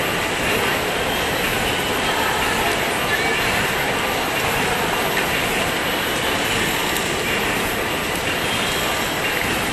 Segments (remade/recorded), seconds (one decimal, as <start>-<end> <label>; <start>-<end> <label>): 0.0-9.7 recorded